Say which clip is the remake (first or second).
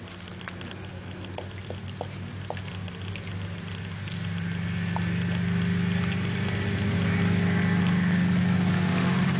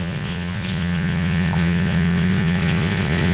second